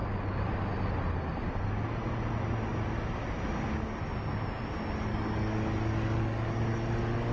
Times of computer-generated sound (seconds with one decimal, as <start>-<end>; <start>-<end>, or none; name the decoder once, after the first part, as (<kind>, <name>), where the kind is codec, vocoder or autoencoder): 5.1-7.3 (codec, DAC)